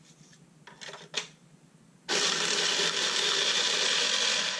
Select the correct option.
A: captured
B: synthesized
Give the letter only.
A